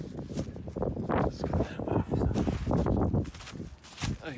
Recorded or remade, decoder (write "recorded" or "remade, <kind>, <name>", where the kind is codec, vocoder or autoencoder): recorded